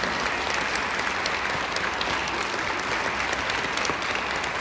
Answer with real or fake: real